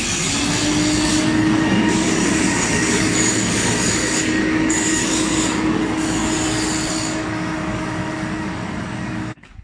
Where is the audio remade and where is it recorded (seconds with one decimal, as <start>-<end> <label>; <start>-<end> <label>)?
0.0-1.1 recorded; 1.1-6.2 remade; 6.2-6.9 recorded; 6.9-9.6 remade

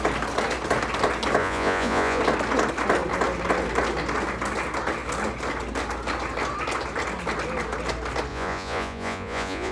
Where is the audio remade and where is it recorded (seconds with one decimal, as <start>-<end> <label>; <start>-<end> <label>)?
0.0-1.4 recorded; 1.4-2.2 remade; 2.2-8.3 recorded; 8.3-9.7 remade

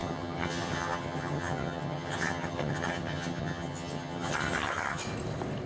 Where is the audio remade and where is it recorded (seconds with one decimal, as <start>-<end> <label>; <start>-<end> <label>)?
0.0-5.0 remade; 5.0-5.7 recorded